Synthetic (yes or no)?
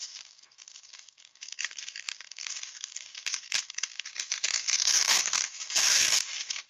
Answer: yes